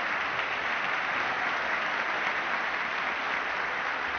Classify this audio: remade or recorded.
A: recorded